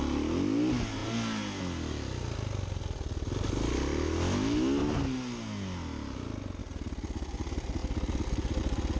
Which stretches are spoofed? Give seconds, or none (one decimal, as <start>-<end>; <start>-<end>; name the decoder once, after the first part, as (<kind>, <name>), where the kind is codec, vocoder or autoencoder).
none